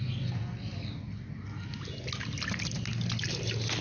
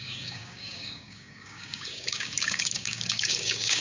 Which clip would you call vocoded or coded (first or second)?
second